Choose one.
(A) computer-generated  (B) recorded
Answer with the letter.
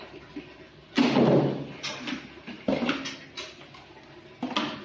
B